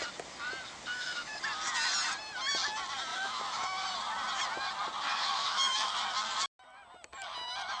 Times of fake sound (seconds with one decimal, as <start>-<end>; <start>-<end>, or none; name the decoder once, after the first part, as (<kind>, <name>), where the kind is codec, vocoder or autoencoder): 0.9-1.4 (autoencoder, DAC-VAE); 3.1-3.6; 5.1-5.9